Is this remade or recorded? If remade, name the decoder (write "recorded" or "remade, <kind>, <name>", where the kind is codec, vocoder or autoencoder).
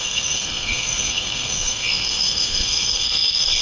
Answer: remade, codec, SNAC